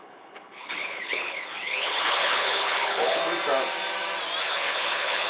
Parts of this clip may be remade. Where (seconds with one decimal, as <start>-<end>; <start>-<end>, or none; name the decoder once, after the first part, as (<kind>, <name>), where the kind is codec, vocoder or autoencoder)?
0.0-3.2 (codec, HILCodec); 4.4-5.3